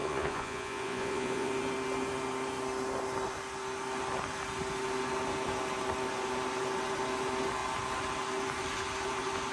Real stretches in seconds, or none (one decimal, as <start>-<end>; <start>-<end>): 1.5-9.5